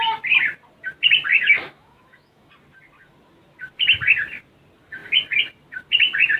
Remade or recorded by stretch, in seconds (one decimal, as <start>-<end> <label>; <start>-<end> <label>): 0.0-1.3 recorded; 1.3-2.5 remade; 2.5-6.4 recorded